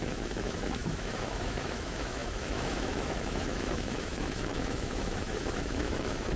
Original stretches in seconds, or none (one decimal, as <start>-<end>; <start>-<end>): none